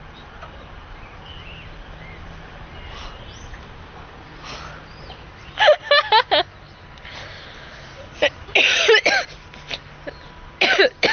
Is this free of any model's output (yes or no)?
yes